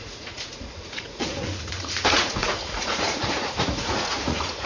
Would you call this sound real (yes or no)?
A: no